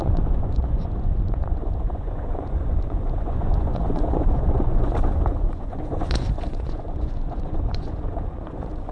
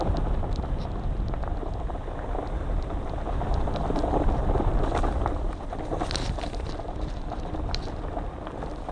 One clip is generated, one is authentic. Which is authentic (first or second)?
second